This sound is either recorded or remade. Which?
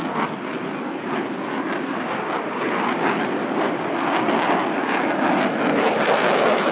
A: recorded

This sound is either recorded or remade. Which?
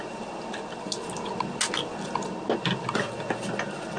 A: recorded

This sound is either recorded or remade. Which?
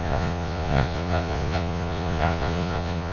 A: remade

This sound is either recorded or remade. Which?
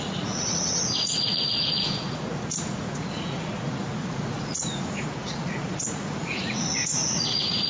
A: remade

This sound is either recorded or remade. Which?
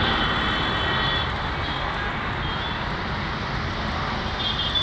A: recorded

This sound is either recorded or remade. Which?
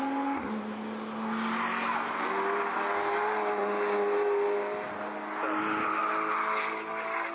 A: recorded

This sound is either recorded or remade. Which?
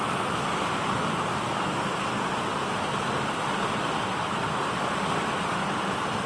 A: recorded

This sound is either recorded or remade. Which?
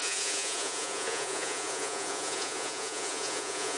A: remade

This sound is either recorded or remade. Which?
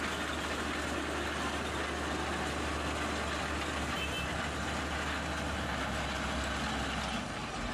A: recorded